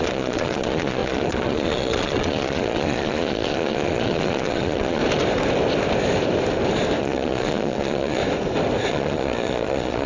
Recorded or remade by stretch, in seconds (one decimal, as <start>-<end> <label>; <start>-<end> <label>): 0.0-5.0 remade; 5.0-7.0 recorded; 7.0-8.2 remade; 8.2-8.9 recorded; 8.9-10.1 remade